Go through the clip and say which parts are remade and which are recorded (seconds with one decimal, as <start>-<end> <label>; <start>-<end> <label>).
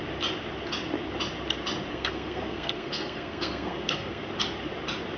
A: 0.0-1.9 recorded; 1.9-4.2 remade; 4.2-5.2 recorded